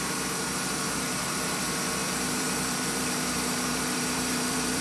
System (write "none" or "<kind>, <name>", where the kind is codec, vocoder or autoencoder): vocoder, BigVGAN v2